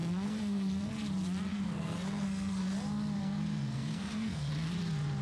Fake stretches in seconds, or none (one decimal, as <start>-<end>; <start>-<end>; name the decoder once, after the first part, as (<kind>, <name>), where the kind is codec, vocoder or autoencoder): 0.0-0.9 (codec, SNAC); 1.5-2.6; 3.2-4.5